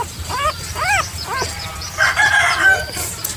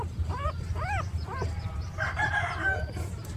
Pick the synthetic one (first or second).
second